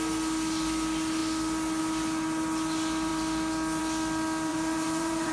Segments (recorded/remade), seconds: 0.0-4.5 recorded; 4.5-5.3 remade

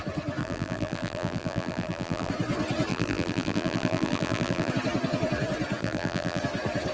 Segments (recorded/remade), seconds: 0.0-0.4 recorded; 0.4-2.3 remade; 2.3-2.9 recorded; 2.9-4.7 remade; 4.7-5.8 recorded; 5.8-6.4 remade; 6.4-6.9 recorded